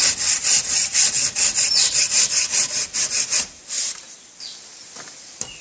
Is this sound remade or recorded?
recorded